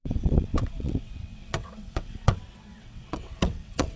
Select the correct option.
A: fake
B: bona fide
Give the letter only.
A